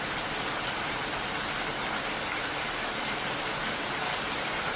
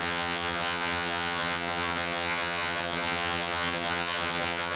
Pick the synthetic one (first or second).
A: second